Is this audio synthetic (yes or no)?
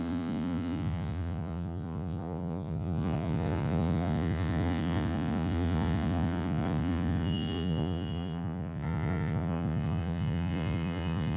yes